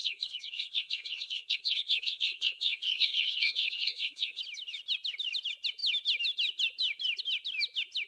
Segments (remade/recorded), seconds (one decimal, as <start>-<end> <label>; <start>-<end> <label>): 0.0-4.4 remade; 4.4-8.1 recorded